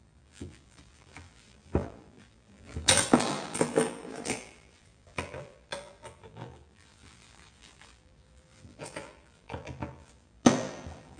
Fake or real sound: fake